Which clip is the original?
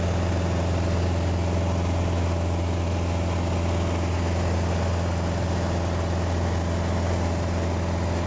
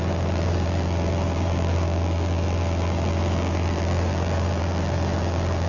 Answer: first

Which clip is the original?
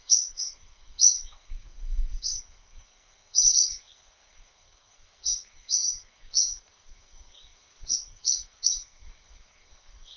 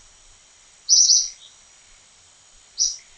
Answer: second